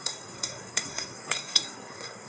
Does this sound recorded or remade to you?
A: remade